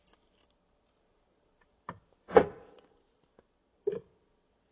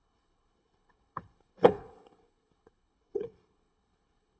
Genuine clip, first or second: first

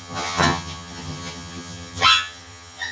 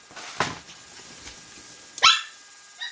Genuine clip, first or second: second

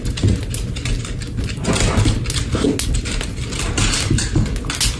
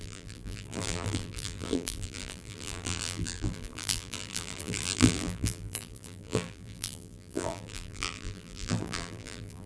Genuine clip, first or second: first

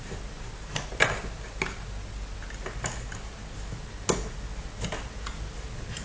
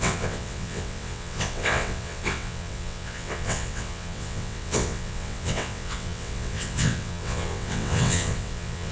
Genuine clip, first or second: first